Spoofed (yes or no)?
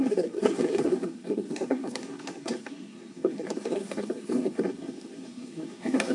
yes